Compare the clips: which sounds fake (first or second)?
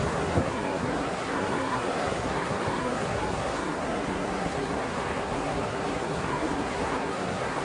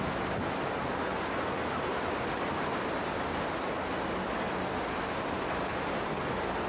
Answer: first